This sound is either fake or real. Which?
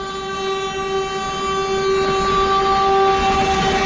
real